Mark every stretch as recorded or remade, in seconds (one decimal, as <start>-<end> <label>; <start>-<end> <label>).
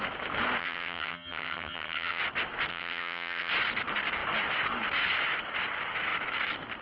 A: 0.0-0.6 recorded; 0.6-2.2 remade; 2.2-2.7 recorded; 2.7-3.5 remade; 3.5-6.8 recorded